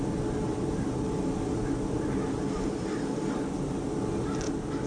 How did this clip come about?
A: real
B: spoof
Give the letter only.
A